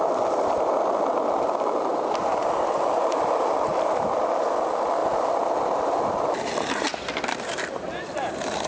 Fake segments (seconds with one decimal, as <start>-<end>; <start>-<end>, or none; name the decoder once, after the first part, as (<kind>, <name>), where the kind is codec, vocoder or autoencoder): 0.0-5.0 (vocoder, BigVGAN v2); 5.5-8.7